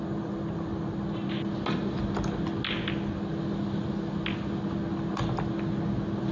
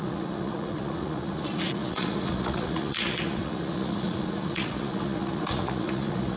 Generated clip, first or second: second